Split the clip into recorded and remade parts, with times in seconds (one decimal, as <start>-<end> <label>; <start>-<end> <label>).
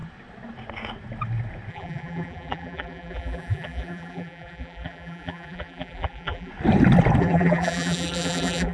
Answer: 0.0-1.7 recorded; 1.7-6.5 remade; 6.5-7.2 recorded; 7.2-8.7 remade